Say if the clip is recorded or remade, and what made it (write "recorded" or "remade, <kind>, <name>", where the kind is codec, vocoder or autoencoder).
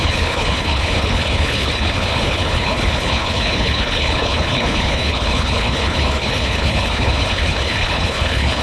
remade, codec, HILCodec